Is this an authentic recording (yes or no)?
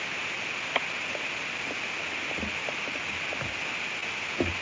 yes